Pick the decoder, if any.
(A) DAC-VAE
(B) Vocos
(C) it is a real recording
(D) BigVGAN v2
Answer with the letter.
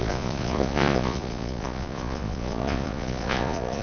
B